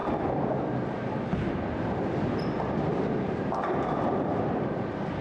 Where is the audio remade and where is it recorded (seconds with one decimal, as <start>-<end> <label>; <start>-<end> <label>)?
0.0-5.2 recorded